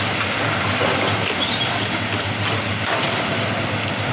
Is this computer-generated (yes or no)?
no